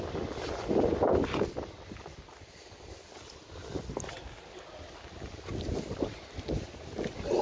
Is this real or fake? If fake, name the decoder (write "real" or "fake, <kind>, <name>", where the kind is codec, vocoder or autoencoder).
real